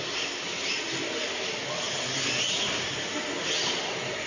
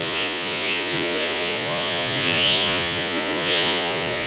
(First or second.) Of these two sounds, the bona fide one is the first